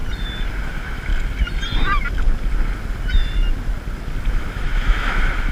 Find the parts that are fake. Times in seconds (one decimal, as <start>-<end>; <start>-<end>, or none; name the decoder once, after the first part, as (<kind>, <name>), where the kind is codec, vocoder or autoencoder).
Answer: 0.6-1.1 (autoencoder, DAC-VAE); 4.3-5.5